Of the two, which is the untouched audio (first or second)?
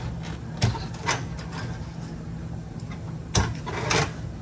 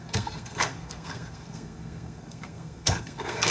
first